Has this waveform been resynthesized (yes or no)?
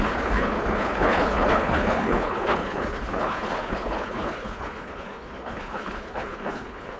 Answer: yes